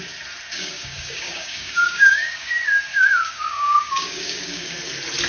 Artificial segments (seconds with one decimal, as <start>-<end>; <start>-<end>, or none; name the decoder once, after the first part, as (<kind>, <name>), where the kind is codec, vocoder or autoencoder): 0.5-2.5 (codec, DAC); 2.9-4.7